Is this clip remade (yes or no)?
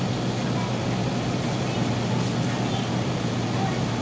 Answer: no